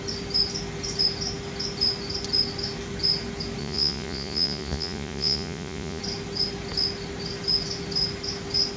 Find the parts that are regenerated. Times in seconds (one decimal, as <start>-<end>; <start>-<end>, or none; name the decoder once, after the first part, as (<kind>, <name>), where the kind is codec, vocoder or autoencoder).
3.6-6.0 (vocoder, Vocos)